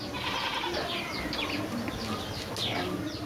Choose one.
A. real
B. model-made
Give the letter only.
A